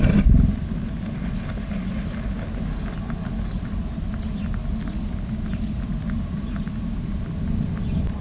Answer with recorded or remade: recorded